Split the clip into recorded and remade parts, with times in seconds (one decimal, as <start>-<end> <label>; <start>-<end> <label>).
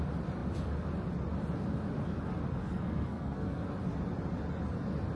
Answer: 0.0-2.5 recorded; 2.5-3.6 remade; 3.6-5.2 recorded